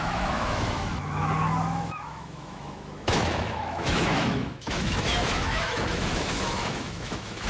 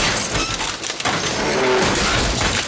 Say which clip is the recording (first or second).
second